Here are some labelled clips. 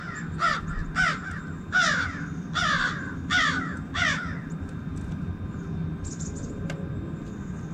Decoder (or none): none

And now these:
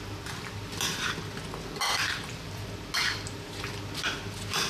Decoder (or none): none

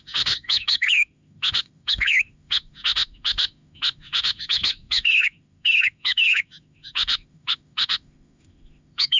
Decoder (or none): autoencoder, DAC-VAE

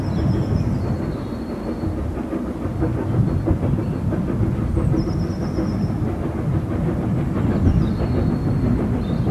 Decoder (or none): none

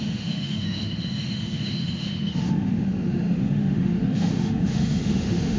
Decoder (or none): autoencoder, DAC-VAE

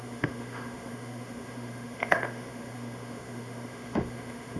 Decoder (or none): autoencoder, DAC-VAE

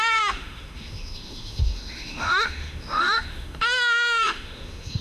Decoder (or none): autoencoder, DAC-VAE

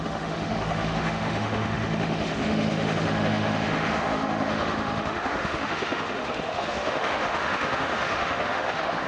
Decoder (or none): autoencoder, DAC-VAE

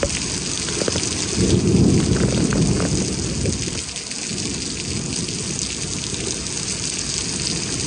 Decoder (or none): none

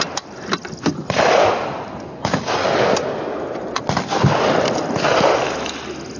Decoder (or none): none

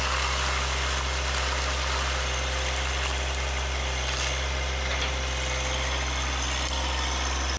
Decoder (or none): none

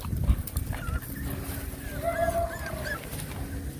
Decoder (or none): none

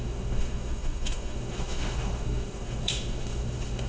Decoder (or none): autoencoder, DAC-VAE